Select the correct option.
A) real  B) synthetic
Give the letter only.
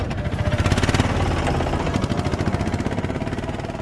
A